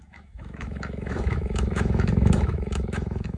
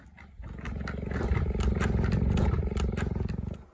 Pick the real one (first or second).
second